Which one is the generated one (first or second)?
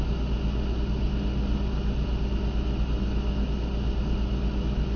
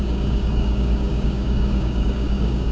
second